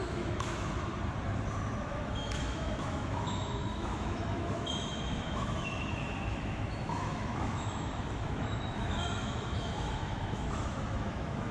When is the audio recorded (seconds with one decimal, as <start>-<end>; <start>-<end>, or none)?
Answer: 0.9-1.8